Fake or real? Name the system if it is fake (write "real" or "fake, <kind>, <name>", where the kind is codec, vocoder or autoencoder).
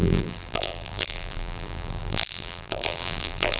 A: fake, vocoder, BigVGAN v2